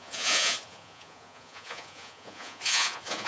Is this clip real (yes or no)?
no